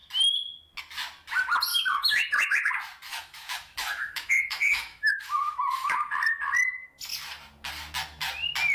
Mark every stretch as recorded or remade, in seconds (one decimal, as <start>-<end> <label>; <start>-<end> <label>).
0.0-1.7 recorded; 1.7-2.7 remade; 2.7-3.1 recorded; 3.1-6.1 remade; 6.1-8.7 recorded